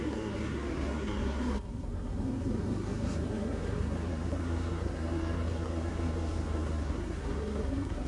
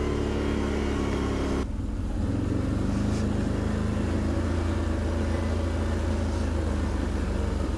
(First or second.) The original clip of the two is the second